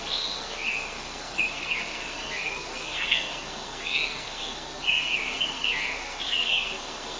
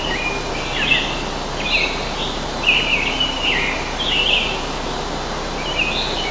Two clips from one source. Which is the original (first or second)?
second